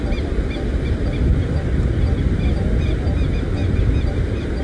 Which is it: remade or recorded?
recorded